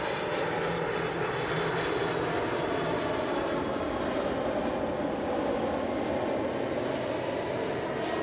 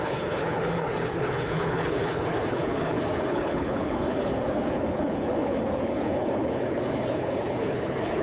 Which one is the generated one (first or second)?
second